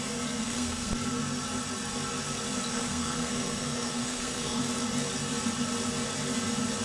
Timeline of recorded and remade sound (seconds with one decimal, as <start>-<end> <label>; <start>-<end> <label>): 0.0-0.4 recorded; 0.4-0.9 remade; 0.9-2.7 recorded; 2.7-4.6 remade; 4.6-6.8 recorded